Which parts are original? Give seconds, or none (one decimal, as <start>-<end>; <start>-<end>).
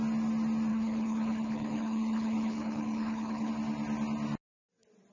0.0-0.7; 3.5-5.1